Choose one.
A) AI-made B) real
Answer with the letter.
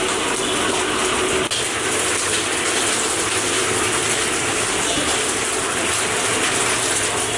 B